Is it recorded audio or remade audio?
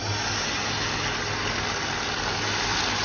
recorded